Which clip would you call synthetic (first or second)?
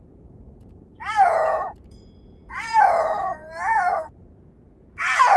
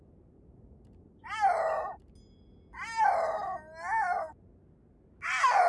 first